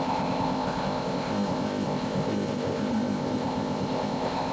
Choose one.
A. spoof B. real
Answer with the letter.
A